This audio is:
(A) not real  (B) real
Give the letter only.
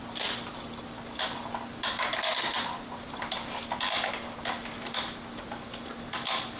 B